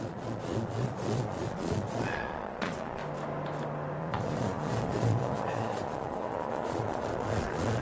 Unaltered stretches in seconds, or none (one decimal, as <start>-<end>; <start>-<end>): 3.0-4.0

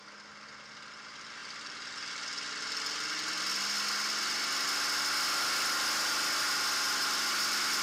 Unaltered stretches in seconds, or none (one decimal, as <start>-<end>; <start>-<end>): 0.0-7.8

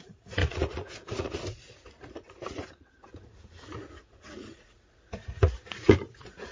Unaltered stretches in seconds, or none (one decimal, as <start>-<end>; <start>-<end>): none

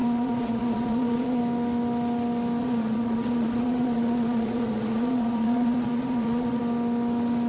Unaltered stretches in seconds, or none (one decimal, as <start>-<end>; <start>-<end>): 1.4-2.6; 6.6-7.5

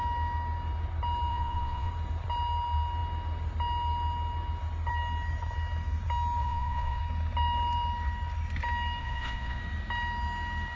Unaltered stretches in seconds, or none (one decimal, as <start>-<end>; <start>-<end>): 0.0-1.3; 1.9-6.4; 7.0-9.0; 9.6-10.8

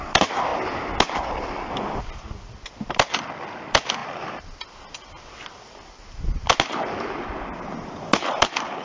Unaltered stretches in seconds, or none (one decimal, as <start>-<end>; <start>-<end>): 0.0-8.8

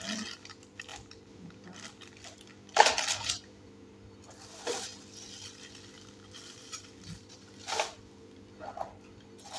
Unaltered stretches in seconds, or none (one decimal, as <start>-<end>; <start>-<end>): 0.0-9.6